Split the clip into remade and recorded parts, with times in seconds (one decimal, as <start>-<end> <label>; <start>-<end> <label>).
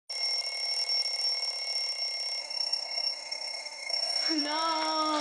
0.0-2.4 recorded; 2.4-4.4 remade; 4.4-5.2 recorded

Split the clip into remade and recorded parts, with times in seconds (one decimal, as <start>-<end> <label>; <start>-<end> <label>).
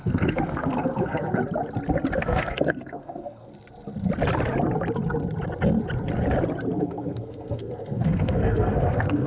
0.0-1.4 remade; 1.4-2.2 recorded; 2.2-3.5 remade; 3.5-6.8 recorded; 6.8-9.3 remade